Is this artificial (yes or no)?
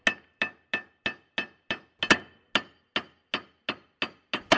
no